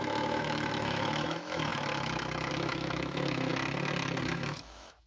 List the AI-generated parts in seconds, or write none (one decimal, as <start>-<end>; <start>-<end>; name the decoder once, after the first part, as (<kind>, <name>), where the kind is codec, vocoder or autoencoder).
0.0-3.5 (autoencoder, DAC-VAE); 4.2-5.1